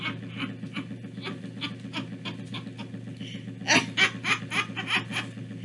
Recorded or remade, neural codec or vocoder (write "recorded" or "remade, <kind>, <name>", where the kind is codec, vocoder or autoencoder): recorded